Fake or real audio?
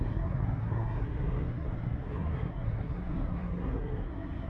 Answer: fake